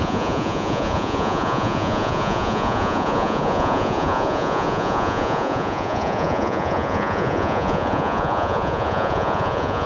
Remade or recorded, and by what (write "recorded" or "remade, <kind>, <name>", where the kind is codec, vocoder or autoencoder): remade, vocoder, Vocos